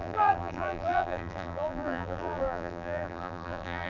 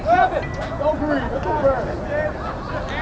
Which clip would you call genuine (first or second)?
second